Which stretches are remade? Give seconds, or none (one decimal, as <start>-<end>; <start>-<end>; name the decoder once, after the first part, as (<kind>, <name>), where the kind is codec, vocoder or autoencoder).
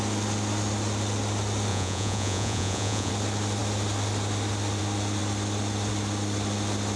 1.7-3.1 (vocoder, Vocos)